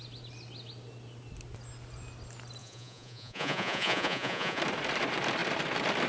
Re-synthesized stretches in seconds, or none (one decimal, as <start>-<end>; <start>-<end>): 2.6-4.6